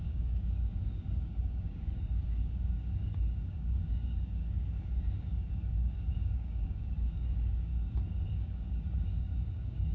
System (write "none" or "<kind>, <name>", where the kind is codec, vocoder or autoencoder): codec, DAC